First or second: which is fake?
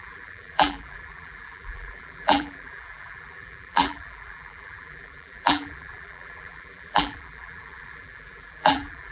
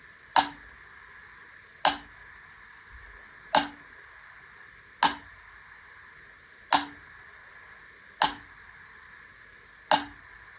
first